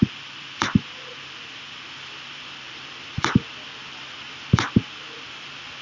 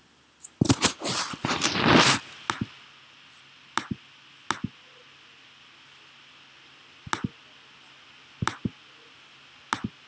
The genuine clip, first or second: second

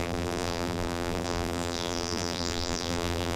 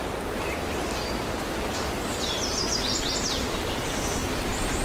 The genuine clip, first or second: second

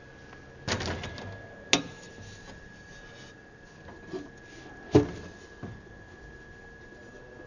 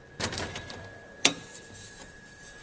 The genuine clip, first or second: first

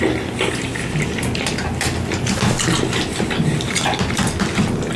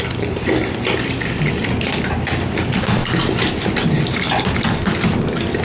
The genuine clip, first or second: first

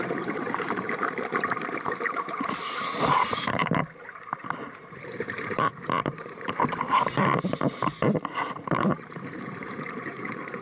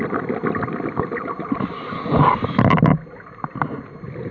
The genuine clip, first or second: second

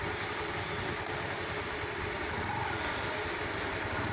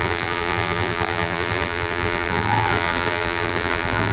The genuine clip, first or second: first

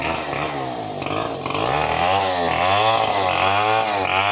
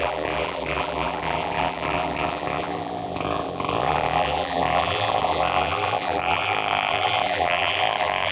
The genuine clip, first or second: first